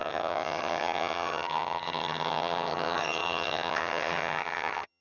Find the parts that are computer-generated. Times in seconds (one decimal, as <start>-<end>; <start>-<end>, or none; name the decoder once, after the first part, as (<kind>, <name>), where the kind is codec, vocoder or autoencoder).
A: 0.0-5.0 (vocoder, HiFi-GAN)